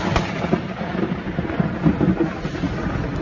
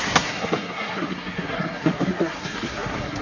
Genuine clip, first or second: first